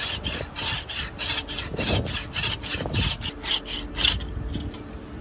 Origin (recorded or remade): recorded